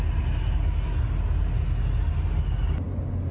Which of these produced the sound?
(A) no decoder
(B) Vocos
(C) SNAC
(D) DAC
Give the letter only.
A